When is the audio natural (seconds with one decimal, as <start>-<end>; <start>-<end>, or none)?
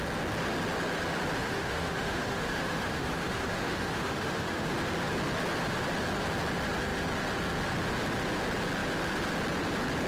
0.0-1.4; 4.7-10.1